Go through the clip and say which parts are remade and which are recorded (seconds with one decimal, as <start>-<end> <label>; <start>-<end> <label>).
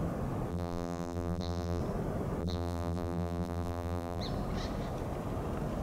0.0-0.5 recorded; 0.5-1.8 remade; 1.8-2.4 recorded; 2.4-4.2 remade; 4.2-5.8 recorded